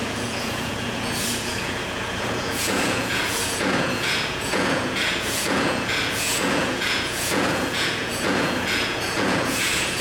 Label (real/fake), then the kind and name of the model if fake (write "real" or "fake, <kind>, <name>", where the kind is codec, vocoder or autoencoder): fake, vocoder, Vocos